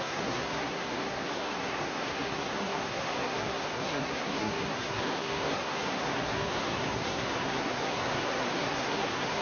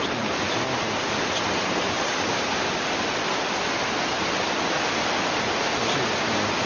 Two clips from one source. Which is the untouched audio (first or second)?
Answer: second